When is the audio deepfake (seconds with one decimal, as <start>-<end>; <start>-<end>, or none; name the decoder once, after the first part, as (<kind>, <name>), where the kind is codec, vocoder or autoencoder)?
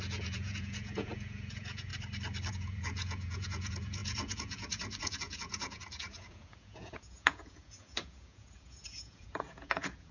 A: 0.0-1.9 (vocoder, Vocos); 2.5-10.1